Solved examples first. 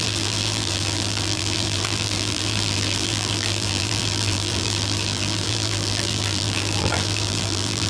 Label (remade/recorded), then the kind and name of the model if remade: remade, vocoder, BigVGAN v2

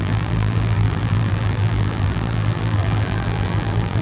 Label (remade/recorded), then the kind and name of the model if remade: remade, vocoder, BigVGAN v2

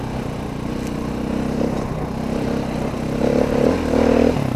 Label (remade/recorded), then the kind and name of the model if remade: recorded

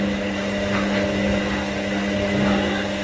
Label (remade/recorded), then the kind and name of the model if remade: recorded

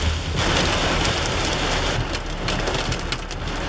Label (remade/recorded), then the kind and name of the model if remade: recorded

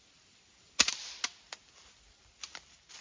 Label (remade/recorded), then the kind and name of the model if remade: recorded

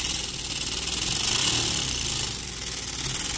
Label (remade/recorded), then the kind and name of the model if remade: recorded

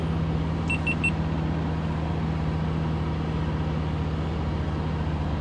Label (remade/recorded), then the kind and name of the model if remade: recorded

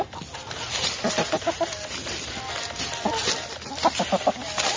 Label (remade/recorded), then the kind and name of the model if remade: recorded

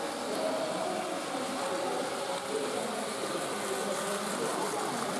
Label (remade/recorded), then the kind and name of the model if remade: recorded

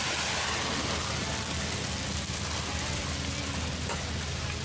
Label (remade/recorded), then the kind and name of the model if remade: recorded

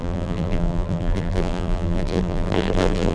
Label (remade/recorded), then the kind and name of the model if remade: remade, vocoder, BigVGAN v2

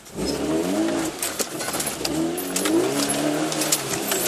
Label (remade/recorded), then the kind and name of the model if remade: recorded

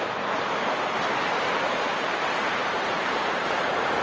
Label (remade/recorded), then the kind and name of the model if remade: remade, vocoder, BigVGAN v2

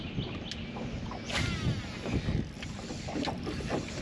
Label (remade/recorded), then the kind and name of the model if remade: recorded